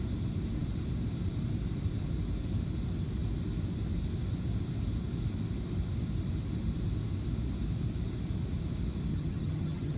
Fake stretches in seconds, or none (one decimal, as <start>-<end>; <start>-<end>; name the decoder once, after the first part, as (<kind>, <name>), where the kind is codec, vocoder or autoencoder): 9.1-10.0 (vocoder, HiFi-GAN)